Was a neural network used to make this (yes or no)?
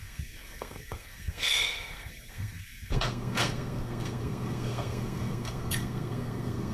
yes